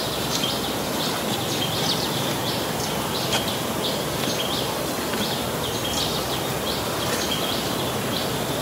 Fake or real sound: real